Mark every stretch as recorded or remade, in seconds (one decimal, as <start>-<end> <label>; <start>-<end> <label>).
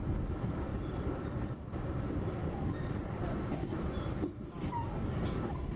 0.0-0.7 recorded; 0.7-3.2 remade; 3.2-3.6 recorded; 3.6-4.3 remade; 4.3-5.8 recorded